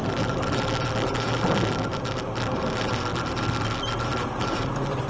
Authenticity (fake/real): fake